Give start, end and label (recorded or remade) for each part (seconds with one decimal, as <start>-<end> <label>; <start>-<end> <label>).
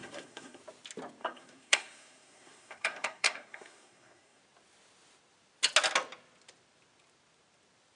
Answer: 0.0-0.6 remade; 0.6-1.2 recorded; 1.2-4.4 remade; 4.4-8.0 recorded